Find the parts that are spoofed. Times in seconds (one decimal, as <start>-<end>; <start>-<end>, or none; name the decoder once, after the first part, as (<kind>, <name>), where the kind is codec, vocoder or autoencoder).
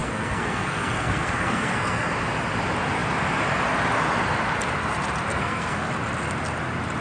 0.0-2.1 (codec, SNAC); 5.3-5.9